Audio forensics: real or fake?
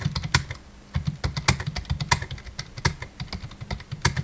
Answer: real